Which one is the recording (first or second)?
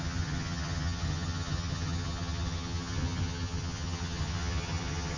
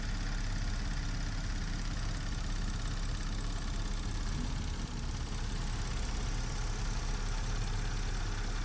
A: second